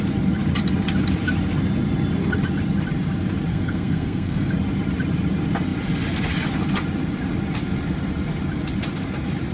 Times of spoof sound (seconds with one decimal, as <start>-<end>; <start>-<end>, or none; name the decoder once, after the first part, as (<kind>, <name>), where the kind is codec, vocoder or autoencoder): 3.5-4.5 (codec, SNAC)